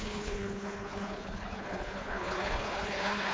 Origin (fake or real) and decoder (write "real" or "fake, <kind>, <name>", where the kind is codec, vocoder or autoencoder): fake, codec, HILCodec